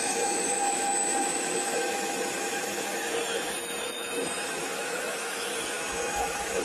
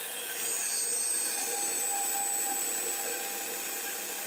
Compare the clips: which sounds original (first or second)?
second